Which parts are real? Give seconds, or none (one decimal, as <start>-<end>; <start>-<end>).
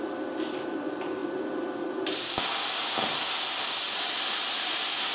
none